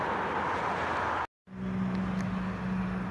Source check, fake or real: real